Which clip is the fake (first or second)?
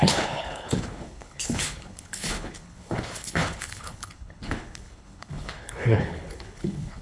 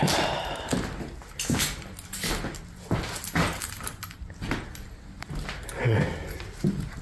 first